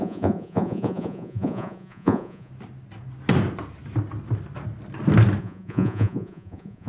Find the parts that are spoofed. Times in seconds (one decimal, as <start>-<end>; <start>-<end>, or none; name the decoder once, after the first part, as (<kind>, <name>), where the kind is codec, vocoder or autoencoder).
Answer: 0.0-2.5 (vocoder, Vocos); 5.4-6.9